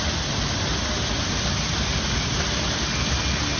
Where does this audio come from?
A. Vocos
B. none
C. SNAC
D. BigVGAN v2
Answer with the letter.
B